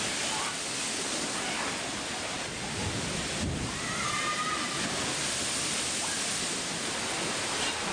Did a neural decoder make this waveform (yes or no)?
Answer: no